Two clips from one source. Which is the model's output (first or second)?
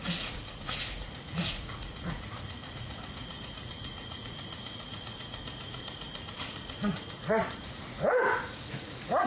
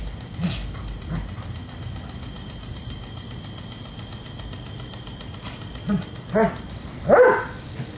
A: first